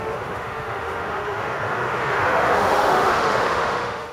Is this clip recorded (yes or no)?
no